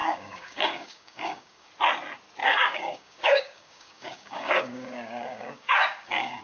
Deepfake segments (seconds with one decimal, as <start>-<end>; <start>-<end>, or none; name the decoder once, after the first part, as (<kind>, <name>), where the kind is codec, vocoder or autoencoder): 0.0-1.7 (codec, DAC); 2.4-6.4